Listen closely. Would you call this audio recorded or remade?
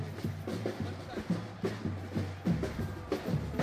recorded